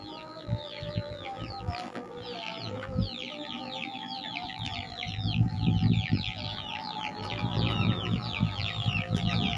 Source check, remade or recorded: remade